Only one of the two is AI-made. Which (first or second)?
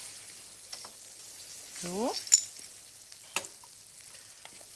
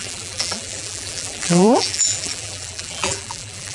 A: second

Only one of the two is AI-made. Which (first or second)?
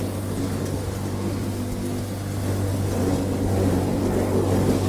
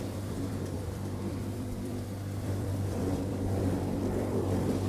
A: second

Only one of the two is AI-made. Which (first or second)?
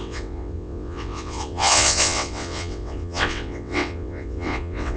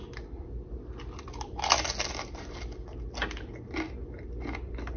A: first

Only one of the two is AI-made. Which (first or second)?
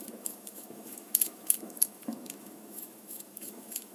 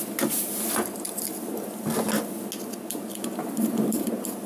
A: first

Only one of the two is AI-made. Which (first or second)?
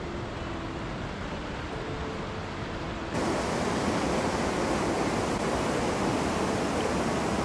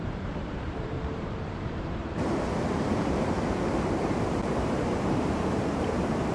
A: second